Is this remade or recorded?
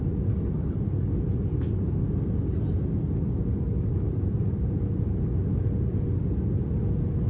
recorded